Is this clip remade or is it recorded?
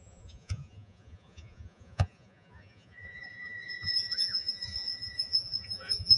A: remade